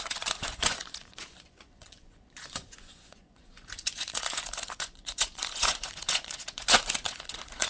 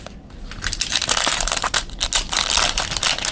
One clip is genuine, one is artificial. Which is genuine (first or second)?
second